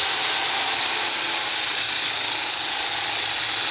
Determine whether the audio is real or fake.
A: real